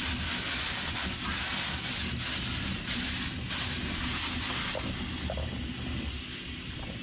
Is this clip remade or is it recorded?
recorded